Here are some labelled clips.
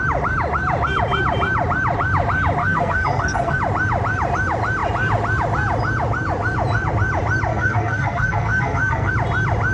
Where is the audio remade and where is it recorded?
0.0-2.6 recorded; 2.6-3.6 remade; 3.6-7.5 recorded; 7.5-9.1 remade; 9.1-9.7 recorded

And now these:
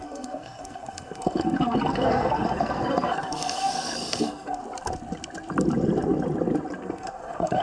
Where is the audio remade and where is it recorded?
0.0-4.6 remade; 4.6-6.8 recorded; 6.8-7.6 remade

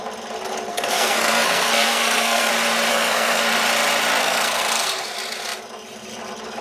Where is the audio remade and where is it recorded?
0.0-0.7 recorded; 0.7-2.5 remade; 2.5-2.9 recorded; 2.9-3.4 remade; 3.4-4.2 recorded; 4.2-5.1 remade; 5.1-6.6 recorded

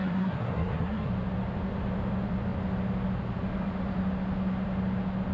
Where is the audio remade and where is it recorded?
0.0-1.1 remade; 1.1-5.3 recorded

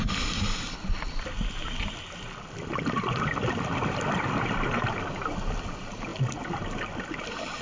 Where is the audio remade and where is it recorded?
0.0-7.6 recorded